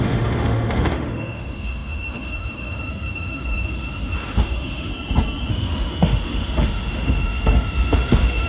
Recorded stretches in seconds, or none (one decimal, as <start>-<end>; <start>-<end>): 4.9-5.5